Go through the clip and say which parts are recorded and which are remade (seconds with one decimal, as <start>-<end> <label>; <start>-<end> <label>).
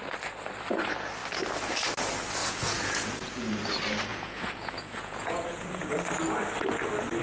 0.0-2.4 recorded; 2.4-3.3 remade; 3.3-4.1 recorded; 4.1-5.9 remade; 5.9-7.2 recorded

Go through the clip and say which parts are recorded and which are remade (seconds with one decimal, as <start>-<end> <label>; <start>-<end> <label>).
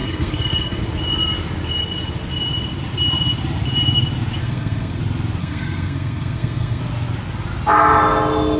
0.0-0.8 remade; 0.8-4.4 recorded; 4.4-5.0 remade; 5.0-5.4 recorded; 5.4-6.8 remade; 6.8-8.6 recorded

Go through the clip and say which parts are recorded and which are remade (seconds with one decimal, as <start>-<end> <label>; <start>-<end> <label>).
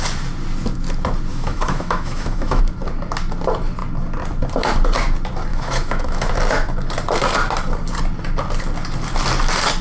0.0-1.3 recorded; 1.3-2.6 remade; 2.6-5.5 recorded; 5.5-6.3 remade; 6.3-9.8 recorded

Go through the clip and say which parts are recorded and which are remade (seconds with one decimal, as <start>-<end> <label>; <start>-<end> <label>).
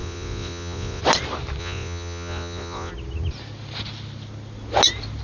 0.0-1.0 remade; 1.0-1.6 recorded; 1.6-2.9 remade; 2.9-5.2 recorded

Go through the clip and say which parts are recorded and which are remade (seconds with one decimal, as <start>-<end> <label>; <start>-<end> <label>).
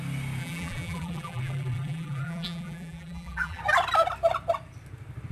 0.0-0.4 recorded; 0.4-3.6 remade; 3.6-5.3 recorded